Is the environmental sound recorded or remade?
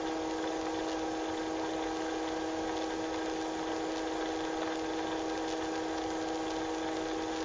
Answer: recorded